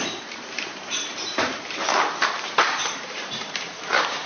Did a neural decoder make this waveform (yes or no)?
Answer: yes